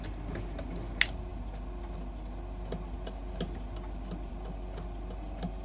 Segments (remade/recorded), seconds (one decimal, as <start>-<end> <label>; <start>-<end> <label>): 0.0-5.6 recorded